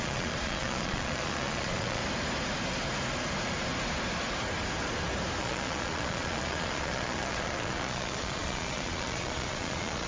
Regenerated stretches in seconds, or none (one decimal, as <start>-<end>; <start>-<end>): 0.0-2.0; 5.4-10.1